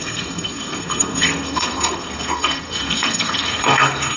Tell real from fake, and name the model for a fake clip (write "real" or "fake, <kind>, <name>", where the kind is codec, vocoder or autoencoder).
fake, codec, SNAC